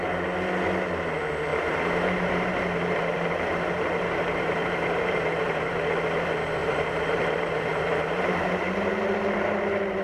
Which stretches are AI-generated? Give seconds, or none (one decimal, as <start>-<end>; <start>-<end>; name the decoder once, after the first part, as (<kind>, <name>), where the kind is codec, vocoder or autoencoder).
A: 1.5-5.8 (vocoder, BigVGAN v2); 6.6-8.5